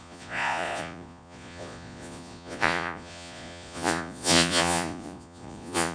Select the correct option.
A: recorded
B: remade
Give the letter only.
B